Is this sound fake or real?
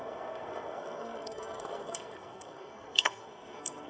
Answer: fake